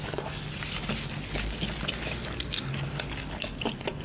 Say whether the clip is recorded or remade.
recorded